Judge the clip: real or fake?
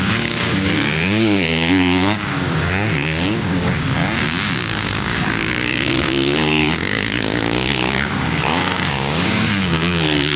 fake